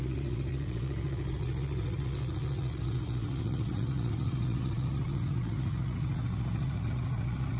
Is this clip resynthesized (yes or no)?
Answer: yes